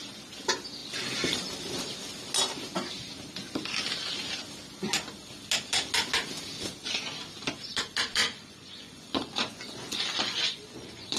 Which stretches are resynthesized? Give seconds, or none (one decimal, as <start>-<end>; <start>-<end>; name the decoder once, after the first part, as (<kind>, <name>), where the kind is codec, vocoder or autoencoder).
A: 8.2-11.2 (vocoder, Vocos)